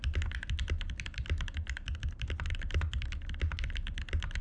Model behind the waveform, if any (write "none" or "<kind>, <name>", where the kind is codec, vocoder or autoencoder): none